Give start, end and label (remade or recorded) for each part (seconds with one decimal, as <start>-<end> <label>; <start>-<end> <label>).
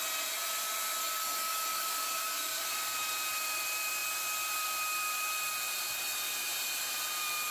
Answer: 0.0-1.0 recorded; 1.0-2.6 remade; 2.6-7.5 recorded